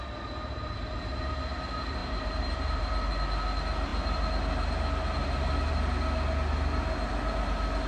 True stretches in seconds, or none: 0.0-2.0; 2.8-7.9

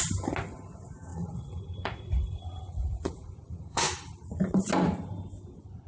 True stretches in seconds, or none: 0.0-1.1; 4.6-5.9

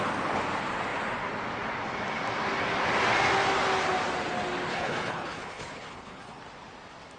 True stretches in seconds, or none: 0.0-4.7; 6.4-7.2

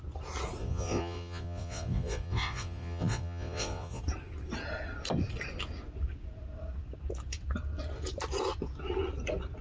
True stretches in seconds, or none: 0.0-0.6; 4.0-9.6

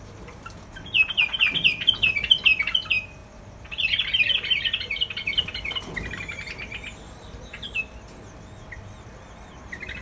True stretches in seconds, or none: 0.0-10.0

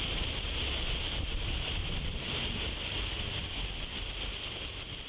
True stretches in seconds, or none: 0.0-5.1

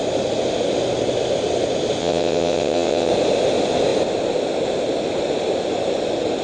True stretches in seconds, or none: 0.0-2.0; 3.1-6.4

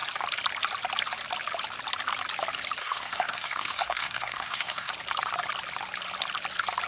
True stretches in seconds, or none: 0.0-2.8; 4.9-6.9